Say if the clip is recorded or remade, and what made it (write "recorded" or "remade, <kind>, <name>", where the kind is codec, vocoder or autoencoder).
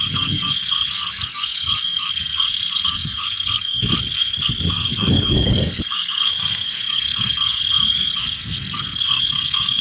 remade, codec, SNAC